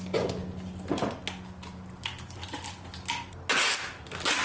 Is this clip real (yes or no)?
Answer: yes